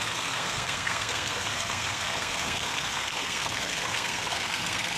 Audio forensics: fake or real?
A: fake